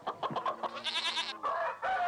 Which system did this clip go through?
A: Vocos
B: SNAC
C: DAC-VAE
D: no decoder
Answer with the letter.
D